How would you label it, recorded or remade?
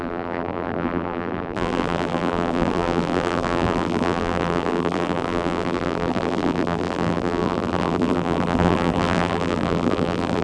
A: remade